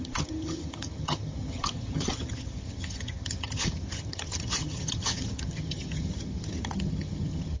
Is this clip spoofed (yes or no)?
yes